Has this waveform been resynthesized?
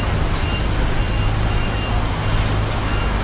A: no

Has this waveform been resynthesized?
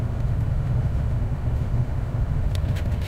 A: yes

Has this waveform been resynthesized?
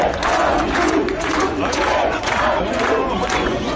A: yes